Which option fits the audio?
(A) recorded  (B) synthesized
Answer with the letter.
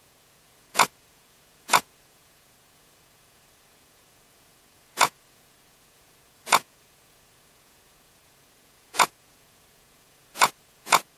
B